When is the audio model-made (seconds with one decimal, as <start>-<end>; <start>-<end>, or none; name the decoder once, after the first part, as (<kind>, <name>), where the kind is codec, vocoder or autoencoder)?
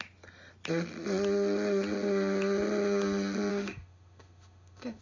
3.5-5.0 (autoencoder, DAC-VAE)